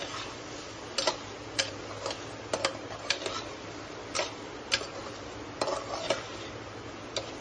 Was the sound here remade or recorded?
recorded